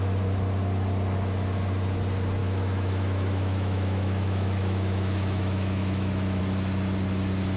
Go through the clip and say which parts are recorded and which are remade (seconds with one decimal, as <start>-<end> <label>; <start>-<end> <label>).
0.0-2.4 recorded; 2.4-6.4 remade; 6.4-7.6 recorded